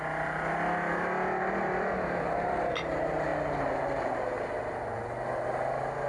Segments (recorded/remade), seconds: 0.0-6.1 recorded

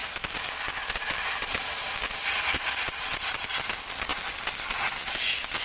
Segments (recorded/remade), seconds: 0.0-5.6 recorded

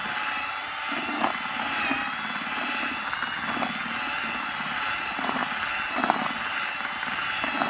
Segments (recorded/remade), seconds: 0.0-4.4 recorded; 4.4-5.4 remade; 5.4-7.7 recorded

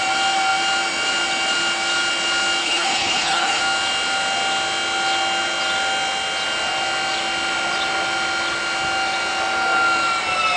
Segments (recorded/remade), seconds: 0.0-2.6 recorded; 2.6-3.6 remade; 3.6-10.6 recorded

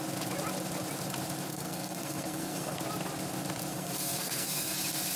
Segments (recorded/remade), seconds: 0.0-1.5 recorded; 1.5-2.8 remade; 2.8-3.7 recorded; 3.7-4.8 remade; 4.8-5.2 recorded

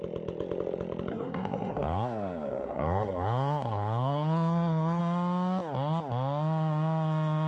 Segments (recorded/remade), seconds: 0.0-1.1 recorded; 1.1-5.0 remade; 5.0-7.5 recorded

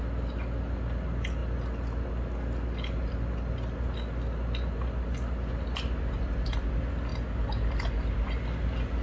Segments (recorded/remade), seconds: 0.0-9.0 recorded

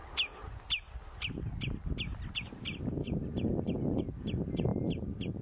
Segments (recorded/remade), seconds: 0.0-5.4 recorded